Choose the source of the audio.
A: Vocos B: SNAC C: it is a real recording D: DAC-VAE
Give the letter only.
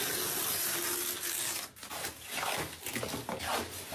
C